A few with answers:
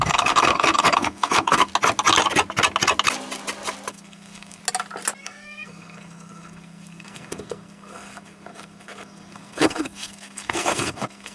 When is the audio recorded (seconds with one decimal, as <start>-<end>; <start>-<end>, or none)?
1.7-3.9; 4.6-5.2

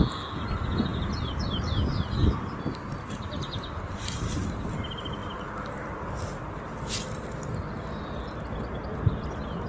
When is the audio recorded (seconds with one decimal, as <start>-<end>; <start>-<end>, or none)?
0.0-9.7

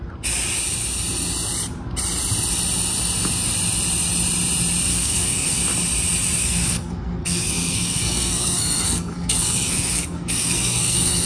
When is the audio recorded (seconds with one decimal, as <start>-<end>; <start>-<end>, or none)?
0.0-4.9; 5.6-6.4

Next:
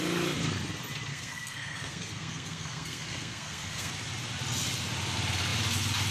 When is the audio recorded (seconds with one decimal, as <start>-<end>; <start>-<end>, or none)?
0.0-1.1; 3.9-6.1

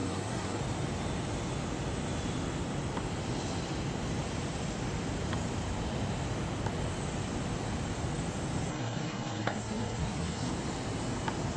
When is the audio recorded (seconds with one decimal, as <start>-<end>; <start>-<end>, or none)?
0.6-8.7; 10.5-11.6

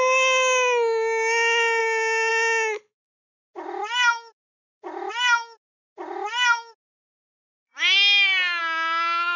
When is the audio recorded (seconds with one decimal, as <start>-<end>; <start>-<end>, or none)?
0.0-9.4

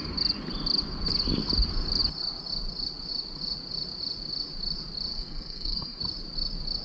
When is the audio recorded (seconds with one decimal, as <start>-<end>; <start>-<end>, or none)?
0.0-5.1; 6.0-6.8